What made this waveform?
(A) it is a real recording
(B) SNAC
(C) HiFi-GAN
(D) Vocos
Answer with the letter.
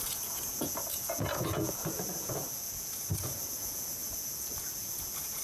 D